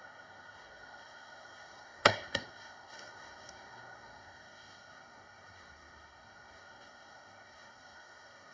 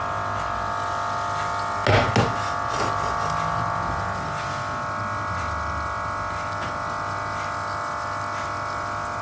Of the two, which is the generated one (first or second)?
first